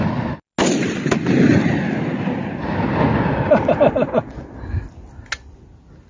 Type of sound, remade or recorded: recorded